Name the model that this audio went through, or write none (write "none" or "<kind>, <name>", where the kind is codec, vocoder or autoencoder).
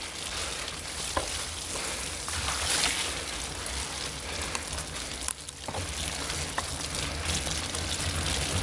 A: none